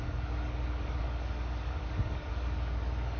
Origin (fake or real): fake